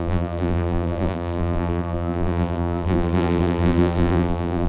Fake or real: fake